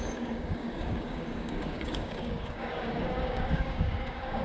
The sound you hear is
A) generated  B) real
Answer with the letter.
A